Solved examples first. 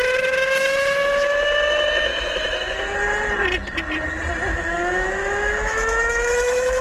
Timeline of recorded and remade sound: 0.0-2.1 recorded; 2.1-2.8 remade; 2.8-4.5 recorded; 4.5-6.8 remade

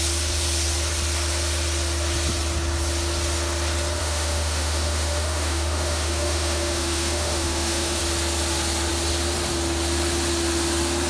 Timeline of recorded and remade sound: 0.0-4.0 recorded; 4.0-8.0 remade; 8.0-11.1 recorded

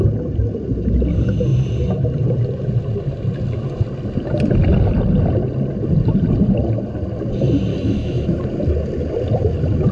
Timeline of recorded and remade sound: 0.0-7.7 recorded; 7.7-8.4 remade; 8.4-9.9 recorded